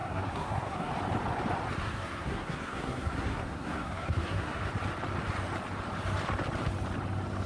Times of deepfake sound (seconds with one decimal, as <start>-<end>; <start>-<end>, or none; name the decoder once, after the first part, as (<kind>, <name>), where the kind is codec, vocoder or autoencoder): 0.0-0.9 (codec, SNAC); 1.8-4.7